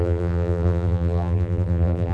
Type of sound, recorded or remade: remade